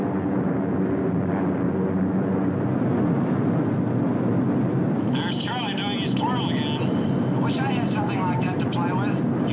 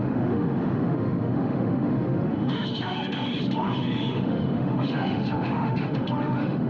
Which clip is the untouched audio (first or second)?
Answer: first